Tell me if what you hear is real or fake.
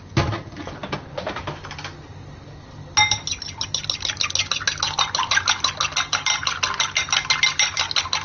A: real